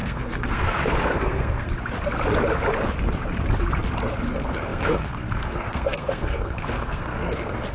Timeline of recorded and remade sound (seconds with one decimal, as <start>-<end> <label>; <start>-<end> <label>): 0.0-1.7 remade; 1.7-4.3 recorded; 4.3-7.7 remade